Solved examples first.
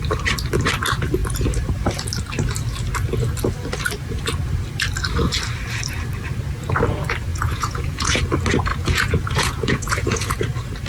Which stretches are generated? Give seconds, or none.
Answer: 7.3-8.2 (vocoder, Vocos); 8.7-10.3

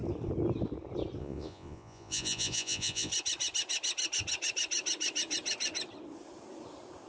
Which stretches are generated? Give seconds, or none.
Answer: 1.2-3.1 (vocoder, Vocos)

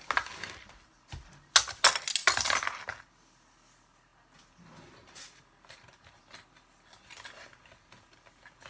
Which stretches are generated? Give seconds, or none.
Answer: none

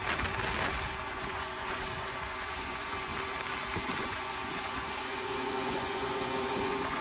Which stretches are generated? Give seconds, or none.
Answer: 1.0-3.1 (vocoder, Vocos); 4.0-7.0

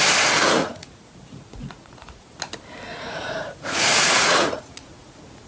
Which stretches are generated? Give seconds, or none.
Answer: 0.6-2.4 (vocoder, Vocos); 2.9-5.5

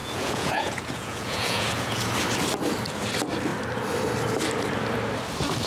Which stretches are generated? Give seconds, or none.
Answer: 0.0-2.1 (vocoder, Vocos)